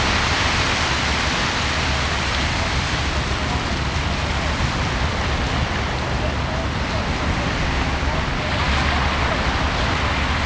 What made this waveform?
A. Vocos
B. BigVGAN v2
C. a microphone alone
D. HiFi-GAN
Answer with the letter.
C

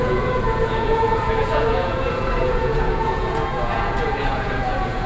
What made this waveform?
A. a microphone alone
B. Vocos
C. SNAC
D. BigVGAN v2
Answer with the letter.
B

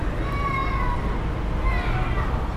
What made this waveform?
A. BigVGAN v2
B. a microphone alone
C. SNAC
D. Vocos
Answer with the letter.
B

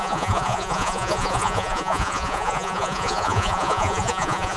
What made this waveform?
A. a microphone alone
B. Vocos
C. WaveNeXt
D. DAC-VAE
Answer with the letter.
B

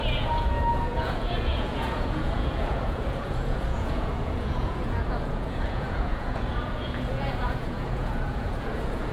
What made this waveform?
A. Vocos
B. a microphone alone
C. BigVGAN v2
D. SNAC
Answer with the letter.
A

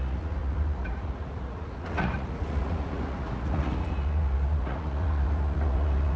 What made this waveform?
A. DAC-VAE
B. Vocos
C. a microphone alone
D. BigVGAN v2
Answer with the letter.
B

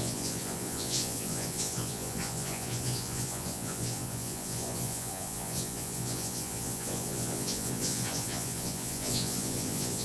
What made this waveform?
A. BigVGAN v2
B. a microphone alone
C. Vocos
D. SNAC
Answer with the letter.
C